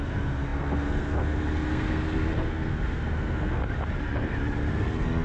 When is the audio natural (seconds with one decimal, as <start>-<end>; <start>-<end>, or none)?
3.6-4.7